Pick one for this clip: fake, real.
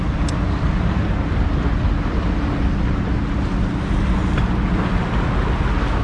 real